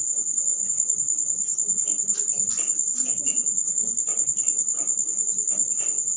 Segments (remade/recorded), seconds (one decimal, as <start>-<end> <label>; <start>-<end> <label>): 0.0-0.5 remade; 0.5-3.2 recorded; 3.2-3.8 remade; 3.8-5.7 recorded; 5.7-6.2 remade